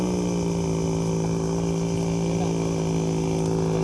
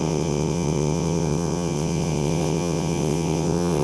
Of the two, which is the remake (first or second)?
second